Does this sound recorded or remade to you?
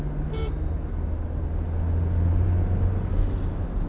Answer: recorded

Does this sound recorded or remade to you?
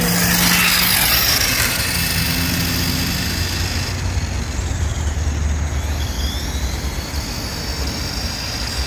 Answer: recorded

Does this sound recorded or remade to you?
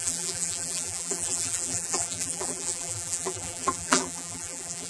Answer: remade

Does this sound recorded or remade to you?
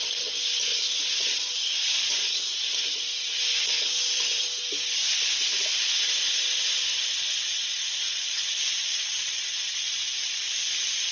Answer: recorded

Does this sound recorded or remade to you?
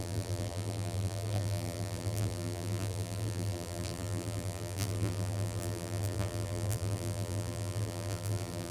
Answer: remade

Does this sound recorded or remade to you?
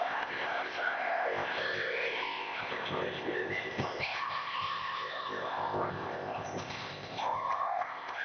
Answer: remade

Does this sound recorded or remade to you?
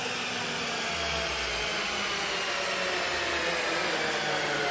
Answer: recorded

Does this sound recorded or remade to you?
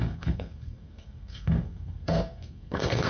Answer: remade